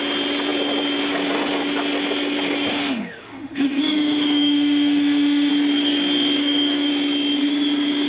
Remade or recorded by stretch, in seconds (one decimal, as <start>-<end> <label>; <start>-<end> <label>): 0.0-2.7 recorded; 2.7-5.5 remade; 5.5-6.4 recorded; 6.4-6.9 remade; 6.9-8.1 recorded